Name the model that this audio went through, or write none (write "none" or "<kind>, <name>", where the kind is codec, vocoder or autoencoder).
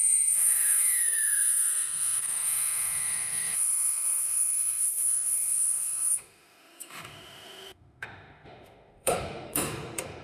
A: autoencoder, DAC-VAE